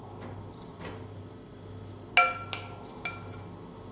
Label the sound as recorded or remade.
recorded